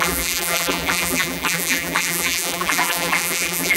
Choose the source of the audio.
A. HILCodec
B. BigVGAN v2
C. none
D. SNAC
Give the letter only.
B